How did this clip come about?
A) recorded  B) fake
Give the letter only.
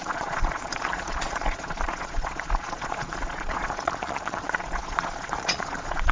B